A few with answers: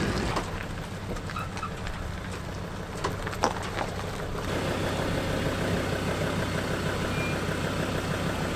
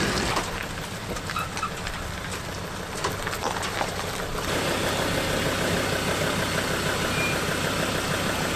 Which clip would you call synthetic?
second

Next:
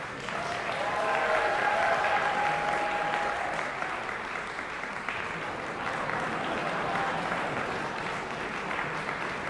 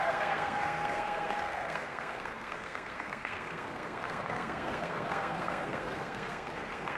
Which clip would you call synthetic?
second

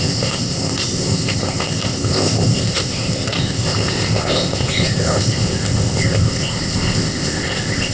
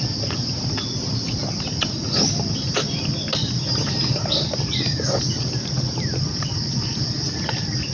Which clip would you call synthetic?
first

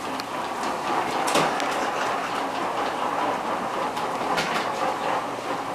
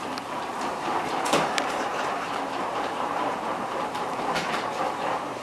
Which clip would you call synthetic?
second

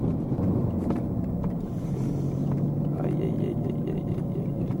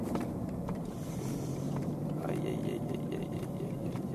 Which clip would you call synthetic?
second